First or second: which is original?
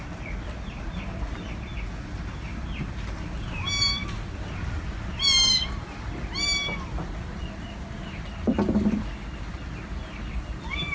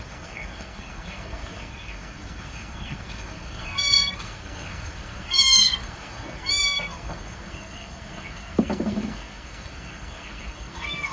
first